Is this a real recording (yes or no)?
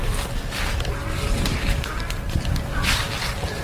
yes